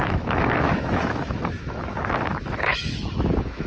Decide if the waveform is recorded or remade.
remade